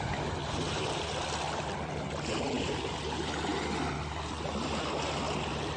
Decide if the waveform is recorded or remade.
recorded